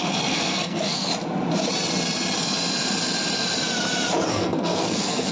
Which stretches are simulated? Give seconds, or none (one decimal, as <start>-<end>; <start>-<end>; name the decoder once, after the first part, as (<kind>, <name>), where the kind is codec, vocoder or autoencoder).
0.0-1.1 (codec, SNAC); 4.3-5.3